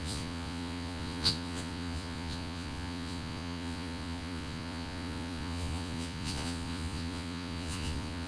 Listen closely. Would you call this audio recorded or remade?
remade